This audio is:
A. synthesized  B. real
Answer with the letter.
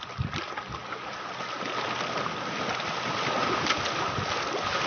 B